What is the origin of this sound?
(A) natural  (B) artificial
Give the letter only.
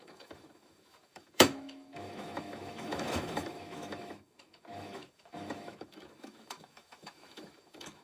B